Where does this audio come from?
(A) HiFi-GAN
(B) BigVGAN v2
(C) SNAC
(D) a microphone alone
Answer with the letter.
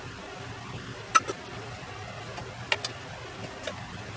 D